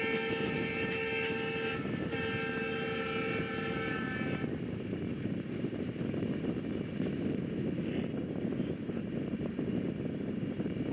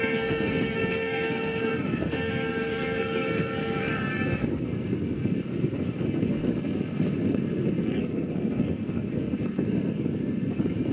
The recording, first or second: first